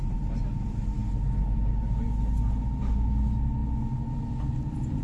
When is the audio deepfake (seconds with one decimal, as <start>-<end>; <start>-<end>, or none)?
none